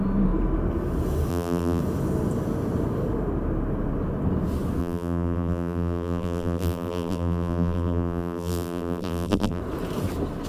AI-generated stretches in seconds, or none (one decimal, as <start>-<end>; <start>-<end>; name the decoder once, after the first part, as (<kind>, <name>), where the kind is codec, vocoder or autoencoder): 1.3-1.8 (vocoder, BigVGAN v2); 4.8-9.6